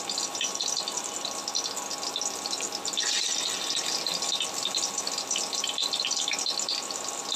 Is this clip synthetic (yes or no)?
no